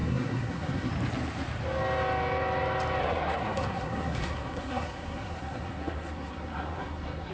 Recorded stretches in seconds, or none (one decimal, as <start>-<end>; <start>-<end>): 0.9-3.0